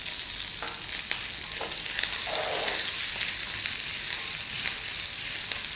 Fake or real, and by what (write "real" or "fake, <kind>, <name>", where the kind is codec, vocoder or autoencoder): real